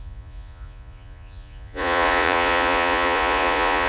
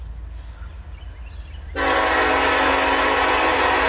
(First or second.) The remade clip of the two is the first